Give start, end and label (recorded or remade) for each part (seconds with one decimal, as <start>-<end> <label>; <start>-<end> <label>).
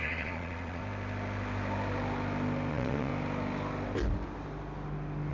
0.0-0.8 remade; 0.8-2.7 recorded; 2.7-3.1 remade; 3.1-5.3 recorded